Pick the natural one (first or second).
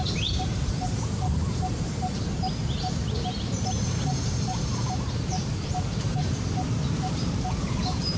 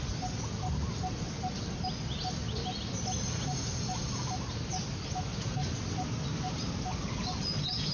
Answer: second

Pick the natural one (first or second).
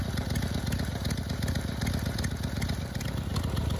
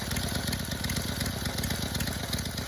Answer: second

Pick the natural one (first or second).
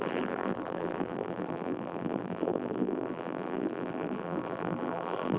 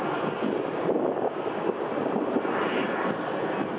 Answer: second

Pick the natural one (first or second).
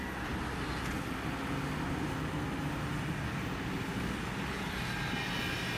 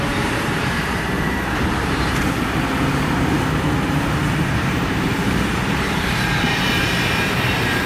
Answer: first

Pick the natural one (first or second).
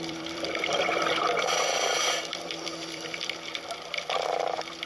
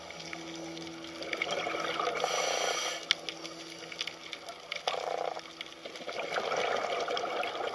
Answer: second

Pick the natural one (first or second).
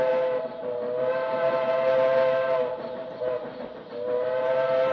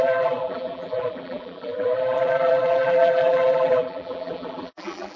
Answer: first